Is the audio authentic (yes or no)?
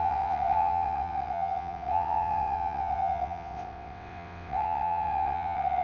no